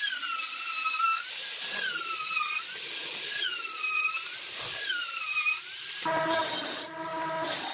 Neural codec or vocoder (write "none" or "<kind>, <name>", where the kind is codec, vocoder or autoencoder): none